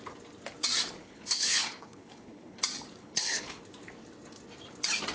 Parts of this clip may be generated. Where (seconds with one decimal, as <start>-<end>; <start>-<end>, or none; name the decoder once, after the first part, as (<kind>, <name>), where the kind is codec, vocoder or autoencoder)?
1.0-2.6 (codec, HILCodec); 3.0-3.6